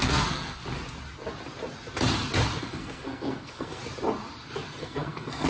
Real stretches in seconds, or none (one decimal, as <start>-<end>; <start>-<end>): 0.6-2.6; 3.8-4.8

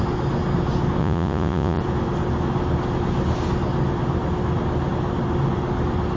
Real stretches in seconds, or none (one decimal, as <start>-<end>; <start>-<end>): 0.0-1.0; 1.8-6.2

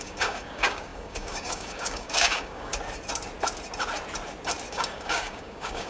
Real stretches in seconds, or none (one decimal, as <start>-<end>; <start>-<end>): 2.7-4.7

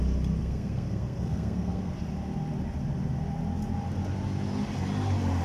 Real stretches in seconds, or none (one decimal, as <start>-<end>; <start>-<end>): 0.0-0.4; 1.9-5.4

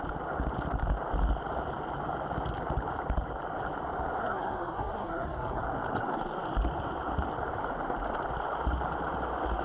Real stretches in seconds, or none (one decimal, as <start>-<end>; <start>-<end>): 0.0-4.2; 5.6-9.6